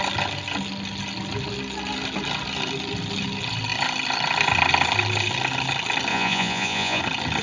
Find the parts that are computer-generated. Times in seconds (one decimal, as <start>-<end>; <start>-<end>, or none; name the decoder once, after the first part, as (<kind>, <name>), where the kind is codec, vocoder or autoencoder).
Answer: 6.1-7.0 (vocoder, Vocos)